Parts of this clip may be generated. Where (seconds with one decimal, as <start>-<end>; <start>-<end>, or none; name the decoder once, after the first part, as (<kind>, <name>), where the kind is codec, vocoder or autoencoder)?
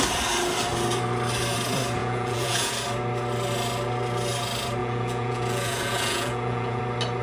2.0-2.7 (vocoder, Vocos); 4.8-6.8